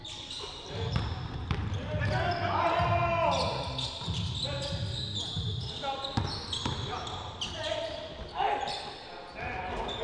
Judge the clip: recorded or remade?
recorded